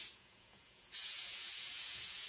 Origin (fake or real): fake